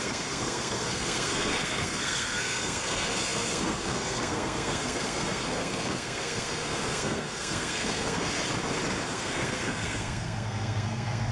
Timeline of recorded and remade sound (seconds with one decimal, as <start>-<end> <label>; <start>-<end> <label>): 0.0-8.4 remade; 8.4-9.1 recorded; 9.1-11.3 remade